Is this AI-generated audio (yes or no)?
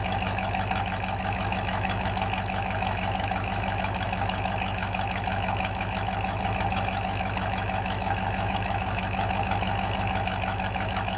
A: yes